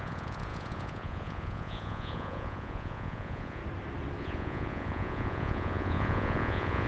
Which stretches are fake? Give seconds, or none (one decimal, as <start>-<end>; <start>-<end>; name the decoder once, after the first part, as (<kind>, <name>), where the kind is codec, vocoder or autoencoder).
0.0-3.6 (vocoder, Vocos); 4.2-6.9